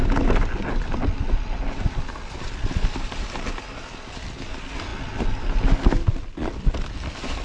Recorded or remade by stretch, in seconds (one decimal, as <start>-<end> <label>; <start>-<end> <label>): 0.0-7.4 recorded

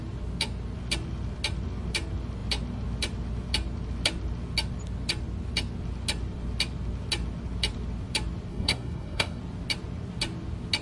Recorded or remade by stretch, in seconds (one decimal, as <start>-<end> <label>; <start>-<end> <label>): 0.0-8.5 recorded; 8.5-9.4 remade; 9.4-10.8 recorded

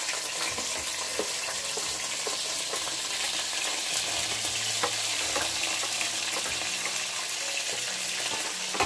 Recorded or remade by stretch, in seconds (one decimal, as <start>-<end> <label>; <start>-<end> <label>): 0.0-1.1 recorded; 1.1-6.1 remade; 6.1-8.9 recorded